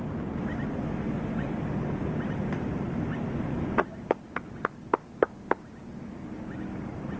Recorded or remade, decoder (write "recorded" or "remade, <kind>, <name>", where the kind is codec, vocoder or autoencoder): recorded